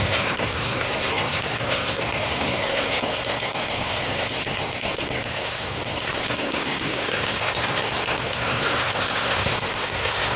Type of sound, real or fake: fake